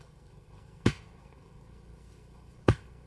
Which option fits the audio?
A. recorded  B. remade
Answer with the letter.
B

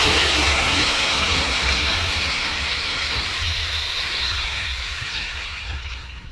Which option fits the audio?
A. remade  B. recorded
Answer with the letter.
A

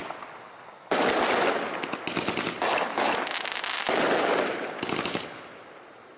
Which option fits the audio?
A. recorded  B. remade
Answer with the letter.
A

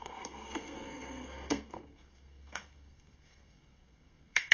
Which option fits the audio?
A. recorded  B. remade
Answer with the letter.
B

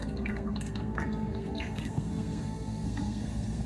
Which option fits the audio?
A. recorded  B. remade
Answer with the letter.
B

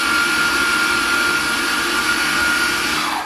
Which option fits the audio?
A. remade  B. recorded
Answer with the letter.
B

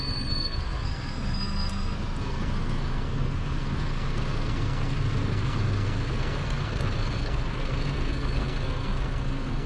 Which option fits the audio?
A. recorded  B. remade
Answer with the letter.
B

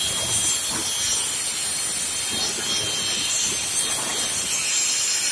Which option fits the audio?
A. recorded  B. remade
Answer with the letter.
A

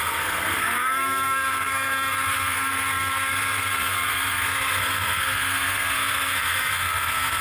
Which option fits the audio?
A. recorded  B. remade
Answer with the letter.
B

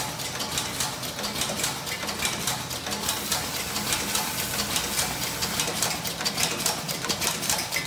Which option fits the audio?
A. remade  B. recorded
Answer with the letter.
B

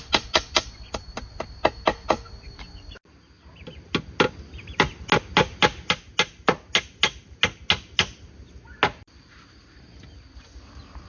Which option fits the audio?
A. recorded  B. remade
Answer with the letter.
A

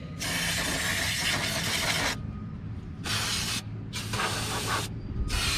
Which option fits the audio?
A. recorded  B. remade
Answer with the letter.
A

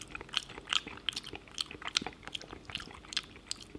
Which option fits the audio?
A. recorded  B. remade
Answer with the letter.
A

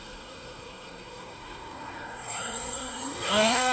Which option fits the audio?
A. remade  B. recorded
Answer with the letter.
A